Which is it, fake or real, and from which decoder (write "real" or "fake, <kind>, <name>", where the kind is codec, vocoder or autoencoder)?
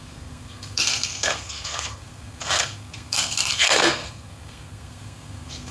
fake, codec, SNAC